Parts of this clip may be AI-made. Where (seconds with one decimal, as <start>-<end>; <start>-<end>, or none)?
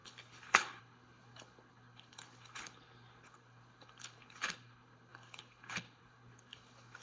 0.0-7.0